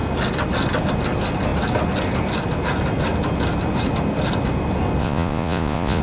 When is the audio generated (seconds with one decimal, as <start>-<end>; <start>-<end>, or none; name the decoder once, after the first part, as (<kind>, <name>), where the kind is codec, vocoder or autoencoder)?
5.0-6.0 (vocoder, Vocos)